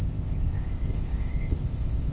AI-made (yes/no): yes